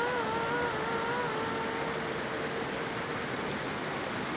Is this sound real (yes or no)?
yes